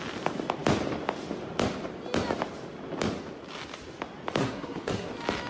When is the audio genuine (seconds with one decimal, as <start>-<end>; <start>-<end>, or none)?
0.0-4.4; 5.1-5.5